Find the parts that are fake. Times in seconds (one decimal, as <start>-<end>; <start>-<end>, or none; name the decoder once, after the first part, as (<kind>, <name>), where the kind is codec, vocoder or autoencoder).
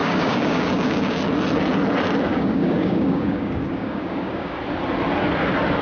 0.0-1.2 (codec, DAC); 2.3-4.6